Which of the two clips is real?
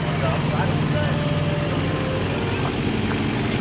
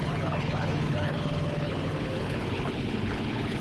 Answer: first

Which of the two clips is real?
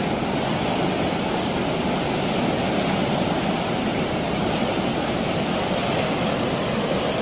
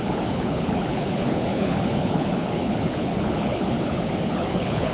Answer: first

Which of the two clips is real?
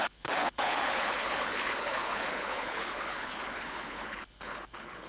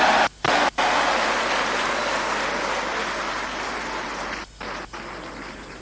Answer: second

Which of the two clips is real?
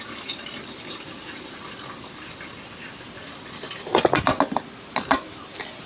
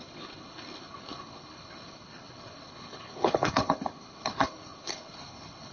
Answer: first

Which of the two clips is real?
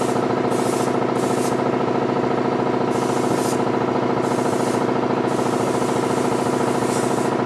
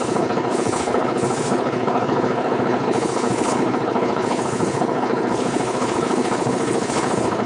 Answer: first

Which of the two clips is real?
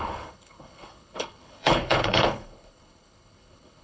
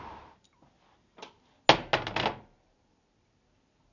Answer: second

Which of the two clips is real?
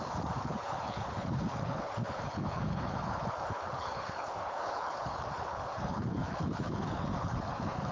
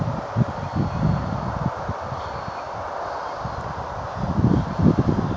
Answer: second